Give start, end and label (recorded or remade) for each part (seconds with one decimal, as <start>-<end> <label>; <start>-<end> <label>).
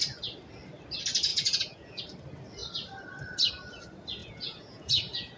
0.0-1.3 recorded; 1.3-2.0 remade; 2.0-4.2 recorded; 4.2-5.4 remade